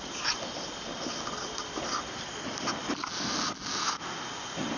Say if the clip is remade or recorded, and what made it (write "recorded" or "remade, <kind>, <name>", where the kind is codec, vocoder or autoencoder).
recorded